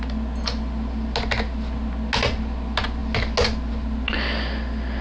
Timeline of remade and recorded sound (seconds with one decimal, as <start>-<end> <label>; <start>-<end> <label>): 0.0-5.0 recorded